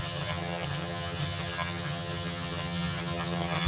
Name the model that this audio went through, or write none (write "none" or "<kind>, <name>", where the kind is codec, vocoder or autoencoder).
vocoder, HiFi-GAN